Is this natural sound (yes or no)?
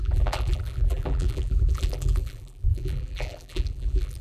no